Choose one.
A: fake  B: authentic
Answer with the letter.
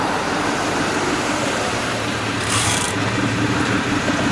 A